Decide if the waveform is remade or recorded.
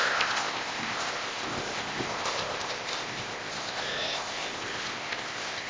remade